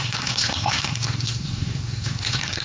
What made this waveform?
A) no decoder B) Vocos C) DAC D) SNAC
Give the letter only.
D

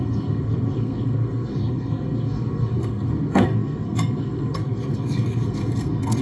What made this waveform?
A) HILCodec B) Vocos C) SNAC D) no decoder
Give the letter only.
C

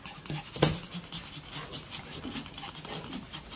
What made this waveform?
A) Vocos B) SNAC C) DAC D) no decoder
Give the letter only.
D